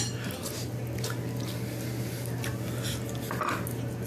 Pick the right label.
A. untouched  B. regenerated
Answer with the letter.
A